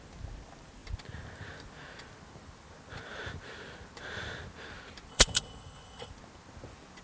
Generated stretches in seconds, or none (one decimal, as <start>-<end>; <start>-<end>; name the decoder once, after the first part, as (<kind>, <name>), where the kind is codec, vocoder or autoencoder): 5.1-6.1 (codec, HILCodec)